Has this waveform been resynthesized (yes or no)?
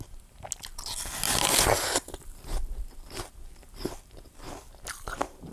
no